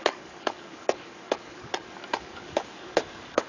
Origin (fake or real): fake